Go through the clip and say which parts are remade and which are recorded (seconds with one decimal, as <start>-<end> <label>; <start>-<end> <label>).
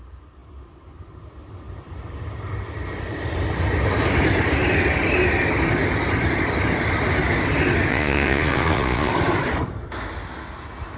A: 0.0-7.9 recorded; 7.9-9.1 remade; 9.1-11.0 recorded